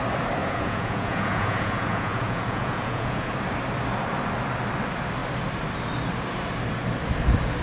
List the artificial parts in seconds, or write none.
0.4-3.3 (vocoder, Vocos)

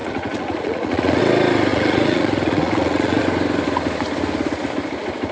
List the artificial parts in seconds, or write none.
0.0-1.2 (vocoder, Vocos); 1.7-3.2